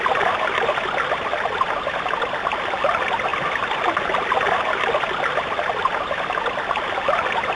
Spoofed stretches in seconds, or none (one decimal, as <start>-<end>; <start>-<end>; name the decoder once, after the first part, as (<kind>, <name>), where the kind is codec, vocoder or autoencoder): none